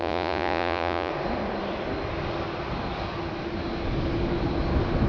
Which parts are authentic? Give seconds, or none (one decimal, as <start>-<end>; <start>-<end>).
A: 1.1-5.1